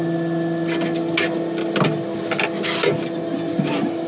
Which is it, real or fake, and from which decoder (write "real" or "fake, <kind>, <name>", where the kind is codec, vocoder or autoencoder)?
real